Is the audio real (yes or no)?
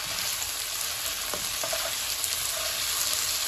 yes